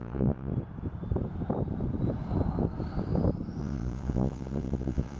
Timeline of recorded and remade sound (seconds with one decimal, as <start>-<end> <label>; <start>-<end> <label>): 0.0-0.5 remade; 0.5-3.6 recorded; 3.6-5.2 remade